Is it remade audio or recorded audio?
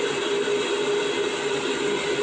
recorded